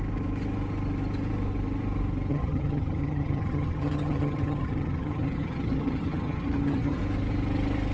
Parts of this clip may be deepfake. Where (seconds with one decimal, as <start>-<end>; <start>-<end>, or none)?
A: 2.3-7.0